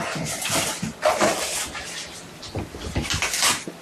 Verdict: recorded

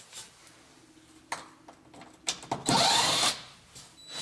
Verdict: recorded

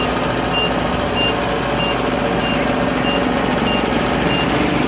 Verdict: recorded